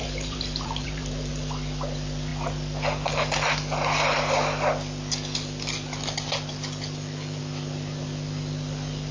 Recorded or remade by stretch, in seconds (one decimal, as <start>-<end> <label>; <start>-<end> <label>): 0.0-1.3 remade; 1.3-9.1 recorded